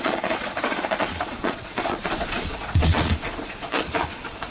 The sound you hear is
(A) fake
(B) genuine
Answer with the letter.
A